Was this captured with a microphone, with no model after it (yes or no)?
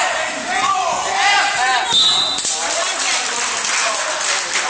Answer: yes